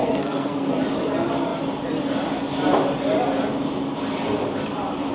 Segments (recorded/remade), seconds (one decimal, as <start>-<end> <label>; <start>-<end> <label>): 0.0-0.7 remade; 0.7-5.1 recorded